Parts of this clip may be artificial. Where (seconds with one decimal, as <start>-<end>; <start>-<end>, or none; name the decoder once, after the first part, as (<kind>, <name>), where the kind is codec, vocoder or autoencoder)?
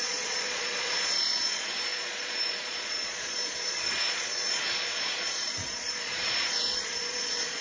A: 0.0-7.6 (vocoder, Vocos)